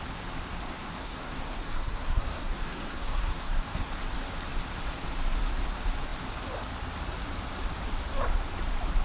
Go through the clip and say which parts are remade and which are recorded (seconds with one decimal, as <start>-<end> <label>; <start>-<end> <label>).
0.0-1.0 recorded; 1.0-3.9 remade; 3.9-9.0 recorded